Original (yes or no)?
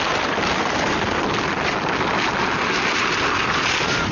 yes